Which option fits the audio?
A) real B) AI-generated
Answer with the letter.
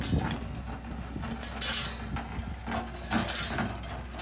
A